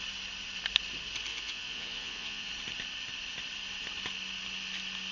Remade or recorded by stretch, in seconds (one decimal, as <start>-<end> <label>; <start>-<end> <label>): 0.0-1.3 recorded; 1.3-2.5 remade; 2.5-5.1 recorded